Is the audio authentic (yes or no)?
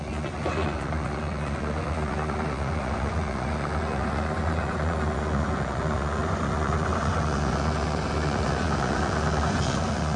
no